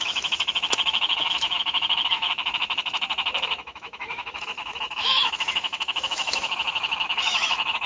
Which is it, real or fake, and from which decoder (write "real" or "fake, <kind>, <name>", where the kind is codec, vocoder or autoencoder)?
fake, autoencoder, DAC-VAE